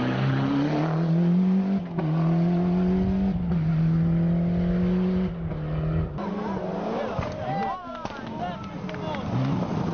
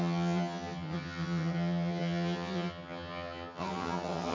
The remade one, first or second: second